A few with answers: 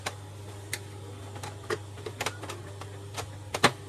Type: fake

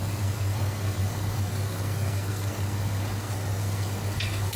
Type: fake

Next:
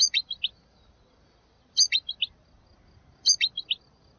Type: real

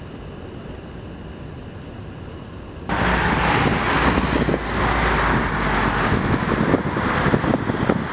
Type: real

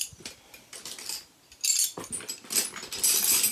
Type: real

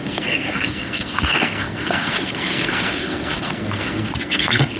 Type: fake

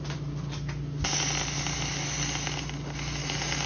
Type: real